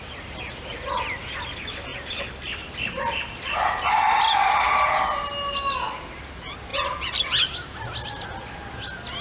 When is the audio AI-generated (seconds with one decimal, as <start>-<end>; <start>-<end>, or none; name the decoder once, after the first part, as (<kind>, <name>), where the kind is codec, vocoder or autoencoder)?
none